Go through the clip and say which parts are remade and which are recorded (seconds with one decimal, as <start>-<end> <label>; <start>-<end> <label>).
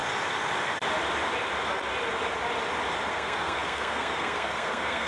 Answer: 0.0-3.1 recorded; 3.1-5.1 remade